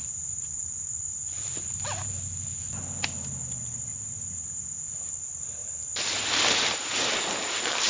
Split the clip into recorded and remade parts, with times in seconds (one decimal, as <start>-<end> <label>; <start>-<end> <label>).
0.0-2.7 remade; 2.7-3.4 recorded; 3.4-3.9 remade; 3.9-5.1 recorded; 5.1-7.9 remade